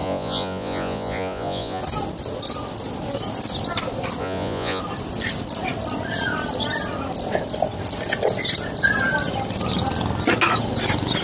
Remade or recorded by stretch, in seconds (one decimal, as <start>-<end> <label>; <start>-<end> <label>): 0.0-1.8 remade; 1.8-4.2 recorded; 4.2-4.8 remade; 4.8-11.2 recorded